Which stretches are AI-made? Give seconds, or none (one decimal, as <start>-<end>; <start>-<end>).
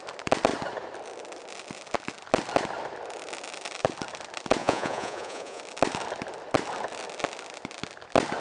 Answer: 4.6-5.6